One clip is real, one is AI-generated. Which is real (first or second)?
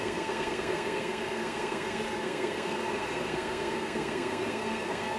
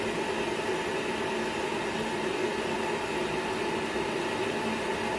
second